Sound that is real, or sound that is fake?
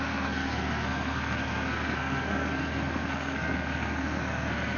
fake